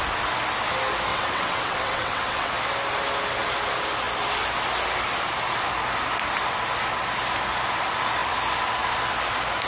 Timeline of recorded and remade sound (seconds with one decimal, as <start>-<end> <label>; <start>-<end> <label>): 0.0-1.1 recorded; 1.1-2.5 remade; 2.5-9.7 recorded